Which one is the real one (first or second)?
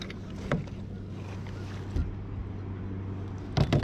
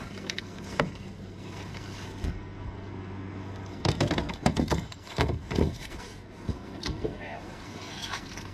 first